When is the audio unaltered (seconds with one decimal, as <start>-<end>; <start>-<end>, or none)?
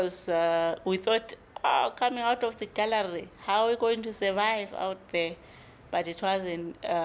0.0-7.0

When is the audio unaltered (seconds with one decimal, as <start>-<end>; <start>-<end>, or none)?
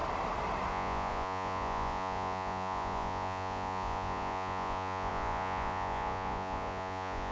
0.0-0.7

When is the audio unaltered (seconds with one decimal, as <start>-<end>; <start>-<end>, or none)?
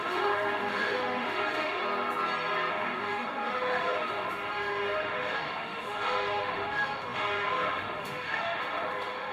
1.8-2.7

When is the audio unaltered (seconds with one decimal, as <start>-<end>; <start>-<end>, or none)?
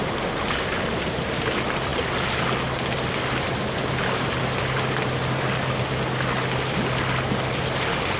0.0-8.2